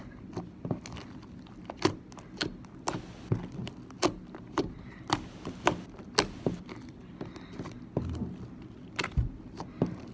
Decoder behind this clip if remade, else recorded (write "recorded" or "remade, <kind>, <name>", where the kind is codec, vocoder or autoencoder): recorded